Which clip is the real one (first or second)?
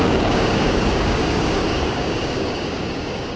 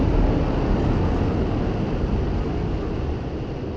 second